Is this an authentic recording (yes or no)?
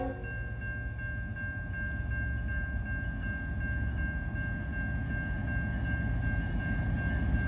yes